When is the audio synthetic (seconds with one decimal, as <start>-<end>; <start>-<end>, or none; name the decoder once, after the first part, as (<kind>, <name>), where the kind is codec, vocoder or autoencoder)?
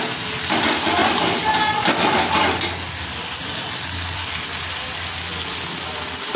none